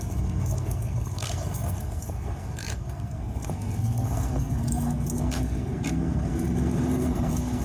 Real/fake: fake